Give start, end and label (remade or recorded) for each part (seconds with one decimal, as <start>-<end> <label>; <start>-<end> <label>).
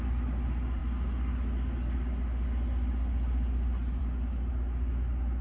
0.0-5.4 recorded